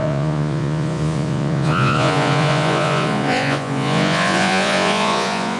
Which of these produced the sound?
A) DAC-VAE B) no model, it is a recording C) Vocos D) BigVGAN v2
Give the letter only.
C